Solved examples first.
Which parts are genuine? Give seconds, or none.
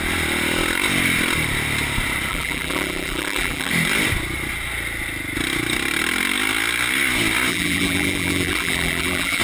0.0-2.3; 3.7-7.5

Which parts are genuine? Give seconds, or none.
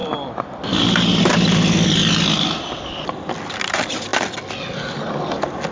0.0-5.7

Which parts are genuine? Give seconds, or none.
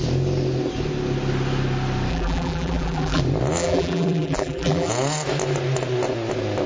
0.0-2.1; 3.2-3.6; 4.9-6.7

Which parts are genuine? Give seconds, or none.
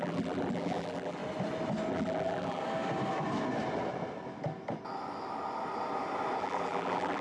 1.2-1.9; 2.6-6.4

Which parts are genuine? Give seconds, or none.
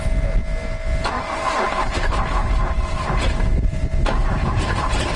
0.0-2.4; 3.9-5.2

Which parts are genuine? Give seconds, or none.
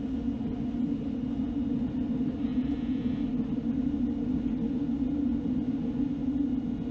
0.0-2.5; 3.0-6.9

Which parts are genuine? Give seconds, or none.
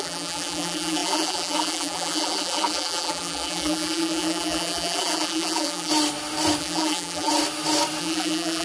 5.9-6.6; 7.3-8.0